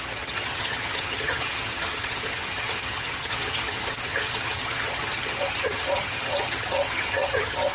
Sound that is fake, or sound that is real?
fake